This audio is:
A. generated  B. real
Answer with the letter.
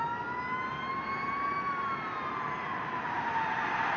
B